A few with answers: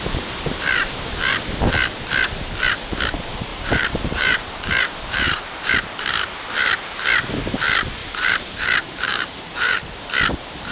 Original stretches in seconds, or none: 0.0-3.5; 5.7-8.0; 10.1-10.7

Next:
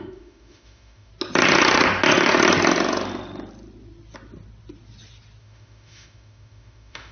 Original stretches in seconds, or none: 1.1-5.4

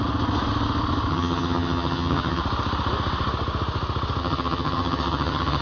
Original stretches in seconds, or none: 0.0-1.1; 2.4-4.2

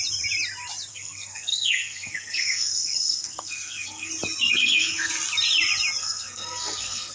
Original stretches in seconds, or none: 0.0-0.9; 4.1-4.6; 5.1-6.0

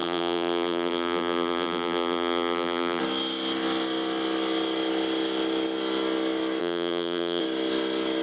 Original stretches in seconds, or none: 3.0-6.6; 7.4-8.2

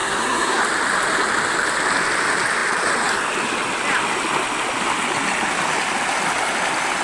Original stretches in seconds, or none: 0.6-7.0

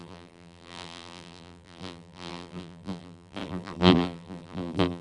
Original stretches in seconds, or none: none

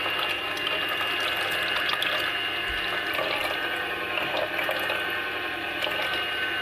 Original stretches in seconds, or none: 0.0-6.6